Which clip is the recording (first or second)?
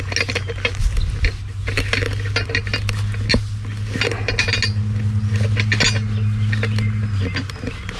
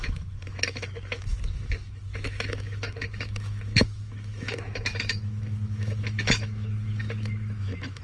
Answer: first